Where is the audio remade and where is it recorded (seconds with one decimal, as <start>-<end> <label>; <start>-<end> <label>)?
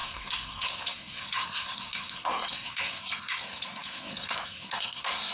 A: 0.0-5.3 remade